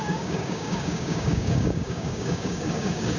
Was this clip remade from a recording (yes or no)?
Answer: yes